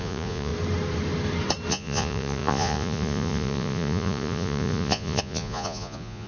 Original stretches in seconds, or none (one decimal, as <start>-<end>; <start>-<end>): 0.5-1.7